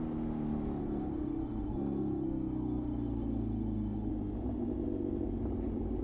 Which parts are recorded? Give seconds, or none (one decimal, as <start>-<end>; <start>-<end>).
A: 0.0-0.8; 4.1-6.0